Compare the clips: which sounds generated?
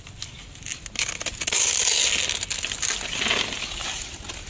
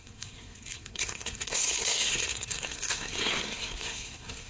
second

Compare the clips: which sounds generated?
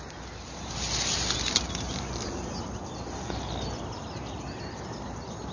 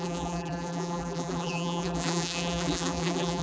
second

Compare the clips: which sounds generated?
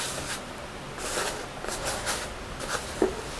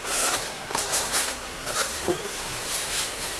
second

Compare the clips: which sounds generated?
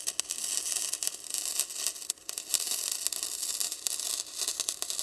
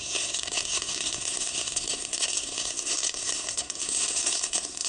second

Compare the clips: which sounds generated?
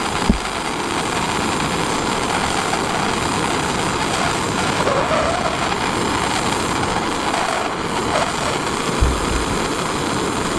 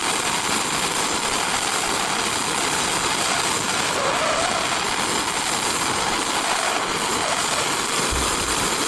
second